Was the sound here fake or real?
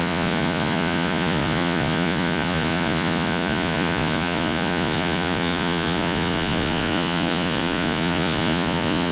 fake